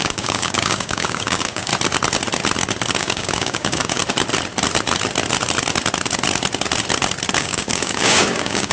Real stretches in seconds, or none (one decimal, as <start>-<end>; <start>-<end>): 1.7-3.0; 4.0-7.4